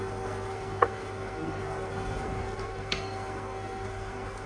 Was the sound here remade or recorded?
remade